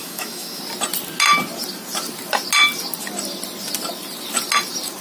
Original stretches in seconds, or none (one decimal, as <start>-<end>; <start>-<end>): 0.6-5.0